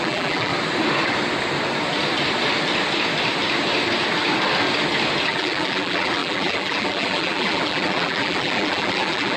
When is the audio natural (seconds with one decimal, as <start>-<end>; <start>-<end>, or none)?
0.5-5.3